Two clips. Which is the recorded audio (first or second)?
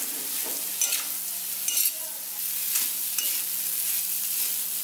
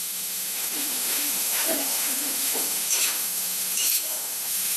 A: first